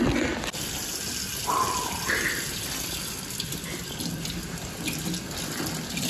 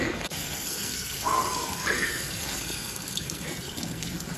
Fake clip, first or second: second